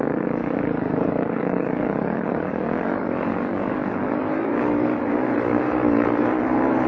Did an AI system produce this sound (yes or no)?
yes